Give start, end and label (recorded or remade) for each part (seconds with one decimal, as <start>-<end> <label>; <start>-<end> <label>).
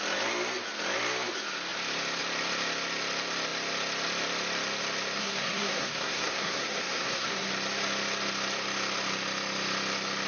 0.0-5.2 recorded; 5.2-7.5 remade; 7.5-10.3 recorded